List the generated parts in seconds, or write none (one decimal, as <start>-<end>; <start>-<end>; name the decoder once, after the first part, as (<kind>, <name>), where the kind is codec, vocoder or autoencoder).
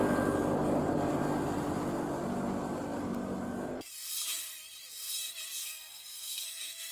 5.6-6.9 (codec, SNAC)